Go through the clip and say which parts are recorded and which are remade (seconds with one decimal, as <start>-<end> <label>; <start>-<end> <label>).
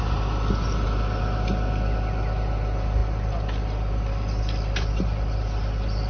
0.0-6.1 recorded